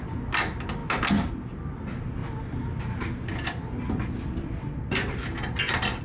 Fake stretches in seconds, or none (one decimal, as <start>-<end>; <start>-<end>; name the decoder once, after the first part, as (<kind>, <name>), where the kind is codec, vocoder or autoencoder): none